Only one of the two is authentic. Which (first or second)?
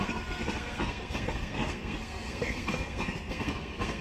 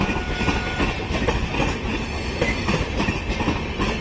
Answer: second